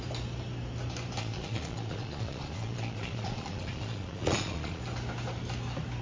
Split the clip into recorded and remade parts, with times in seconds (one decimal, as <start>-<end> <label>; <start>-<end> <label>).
0.0-1.2 recorded; 1.2-4.8 remade; 4.8-6.0 recorded